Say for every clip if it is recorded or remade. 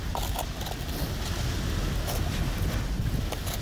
recorded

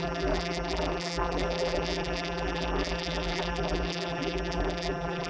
remade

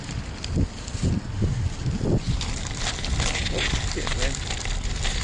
recorded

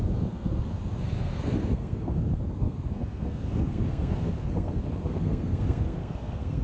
remade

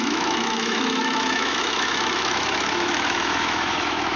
remade